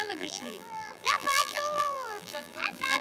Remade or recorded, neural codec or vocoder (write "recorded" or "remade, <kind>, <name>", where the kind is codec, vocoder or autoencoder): remade, vocoder, BigVGAN v2